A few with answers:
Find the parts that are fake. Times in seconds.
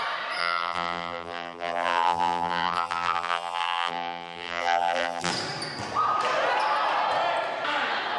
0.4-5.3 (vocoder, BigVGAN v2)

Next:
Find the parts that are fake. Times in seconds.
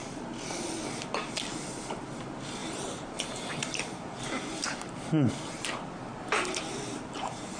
2.6-5.3 (vocoder, BigVGAN v2); 6.7-7.6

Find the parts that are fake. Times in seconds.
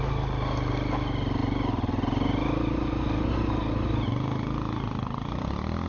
none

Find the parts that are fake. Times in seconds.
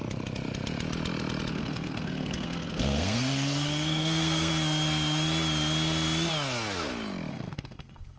1.5-4.5 (codec, SNAC); 7.3-8.2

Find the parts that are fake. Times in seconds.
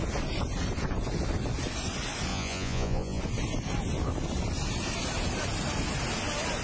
2.3-3.2 (vocoder, Vocos)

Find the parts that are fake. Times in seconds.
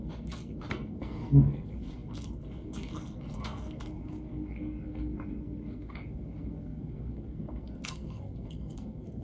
0.0-9.2 (codec, SNAC)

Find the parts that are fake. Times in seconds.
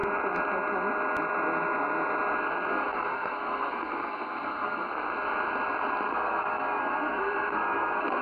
2.7-4.9 (codec, SNAC); 6.1-8.2